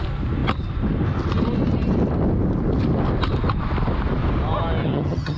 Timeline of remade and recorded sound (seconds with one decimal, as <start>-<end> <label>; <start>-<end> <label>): 0.0-4.8 recorded; 4.8-5.4 remade